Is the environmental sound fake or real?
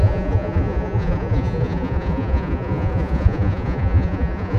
fake